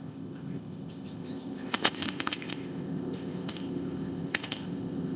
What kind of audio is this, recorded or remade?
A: remade